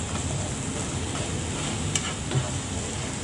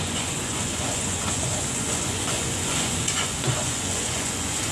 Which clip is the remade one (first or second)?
second